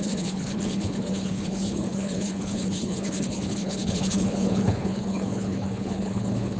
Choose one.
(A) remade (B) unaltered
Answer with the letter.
A